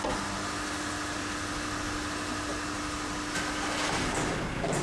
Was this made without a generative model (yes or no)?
yes